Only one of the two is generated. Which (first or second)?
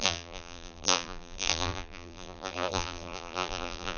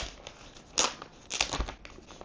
first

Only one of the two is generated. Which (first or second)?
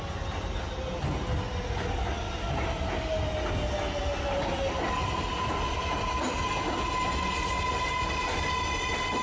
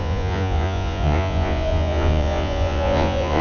second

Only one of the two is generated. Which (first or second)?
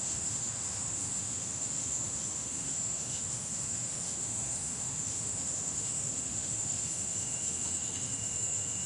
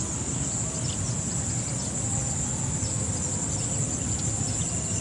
first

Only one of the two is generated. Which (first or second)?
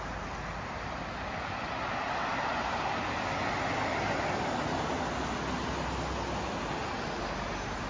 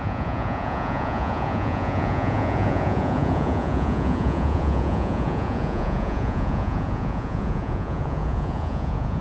second